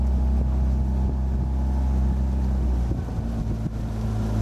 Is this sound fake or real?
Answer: real